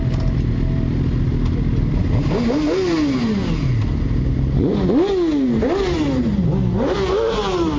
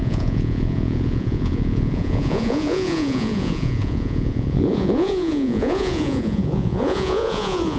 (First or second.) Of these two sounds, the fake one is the second